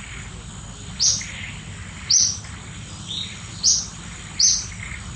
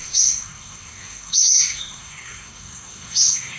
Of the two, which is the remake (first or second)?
second